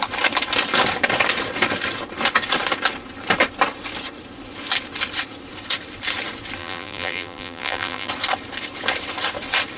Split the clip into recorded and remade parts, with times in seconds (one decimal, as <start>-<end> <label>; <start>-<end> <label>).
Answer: 0.0-6.6 recorded; 6.6-8.1 remade; 8.1-9.8 recorded